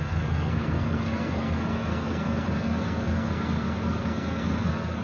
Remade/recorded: remade